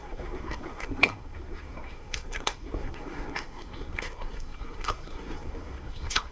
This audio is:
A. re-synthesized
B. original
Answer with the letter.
A